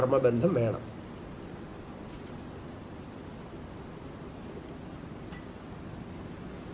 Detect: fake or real real